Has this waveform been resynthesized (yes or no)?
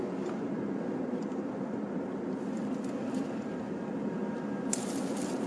no